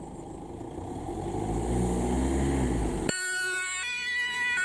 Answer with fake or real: real